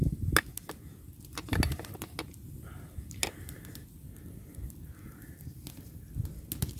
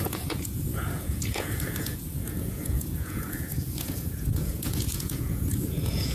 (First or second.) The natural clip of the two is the first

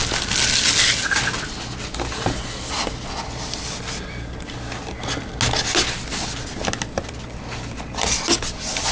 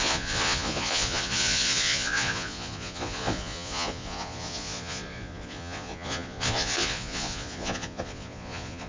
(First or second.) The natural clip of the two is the first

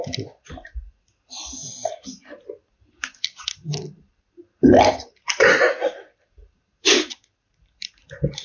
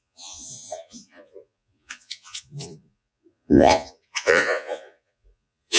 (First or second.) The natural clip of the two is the first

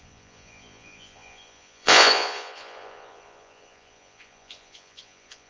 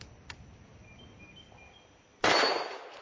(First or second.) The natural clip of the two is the second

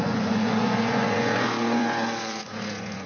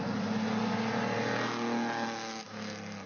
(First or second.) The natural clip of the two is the second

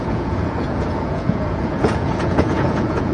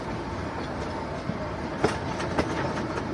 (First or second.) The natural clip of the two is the second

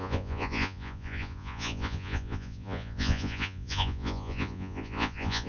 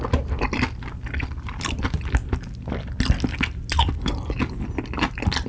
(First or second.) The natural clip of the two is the second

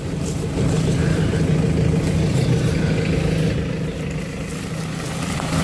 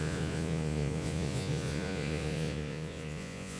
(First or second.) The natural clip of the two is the first